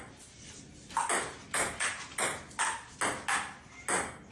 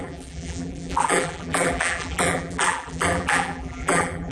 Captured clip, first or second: first